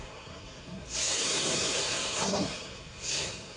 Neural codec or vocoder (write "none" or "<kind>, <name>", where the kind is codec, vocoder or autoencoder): codec, SNAC